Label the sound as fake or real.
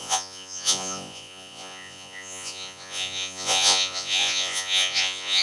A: fake